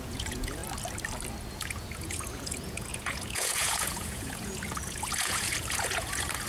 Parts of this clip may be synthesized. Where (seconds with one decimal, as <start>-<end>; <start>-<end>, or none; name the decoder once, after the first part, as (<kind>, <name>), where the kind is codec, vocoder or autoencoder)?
0.0-0.6 (vocoder, Vocos); 1.5-6.5